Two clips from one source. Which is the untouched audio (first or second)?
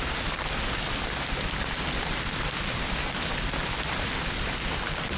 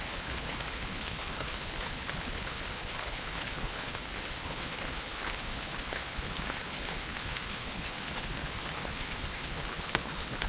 first